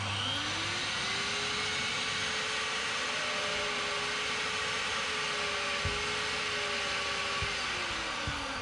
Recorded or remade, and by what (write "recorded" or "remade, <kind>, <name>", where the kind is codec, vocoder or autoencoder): recorded